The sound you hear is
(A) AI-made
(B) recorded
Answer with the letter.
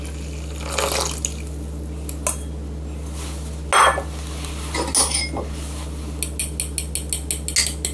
B